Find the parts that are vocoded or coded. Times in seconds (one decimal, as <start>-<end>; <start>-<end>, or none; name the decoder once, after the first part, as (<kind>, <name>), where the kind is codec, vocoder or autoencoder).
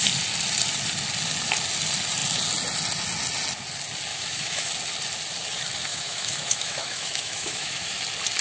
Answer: 4.1-4.7 (autoencoder, DAC-VAE); 5.9-8.0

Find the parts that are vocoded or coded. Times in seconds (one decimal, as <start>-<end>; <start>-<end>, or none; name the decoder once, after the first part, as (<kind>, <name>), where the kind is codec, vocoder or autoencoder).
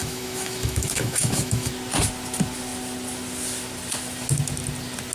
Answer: 0.0-1.7 (autoencoder, DAC-VAE)